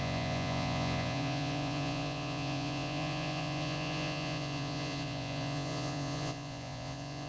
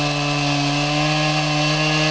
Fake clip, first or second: first